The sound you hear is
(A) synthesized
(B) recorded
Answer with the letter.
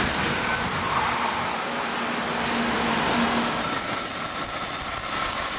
B